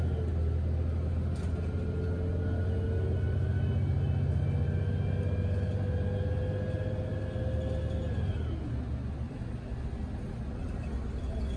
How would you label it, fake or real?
real